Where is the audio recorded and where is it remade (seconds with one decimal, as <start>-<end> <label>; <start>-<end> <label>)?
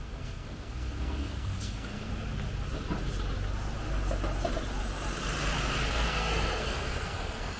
0.0-2.1 remade; 2.1-5.9 recorded; 5.9-7.6 remade